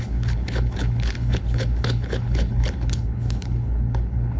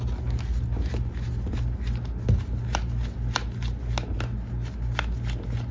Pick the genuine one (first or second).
second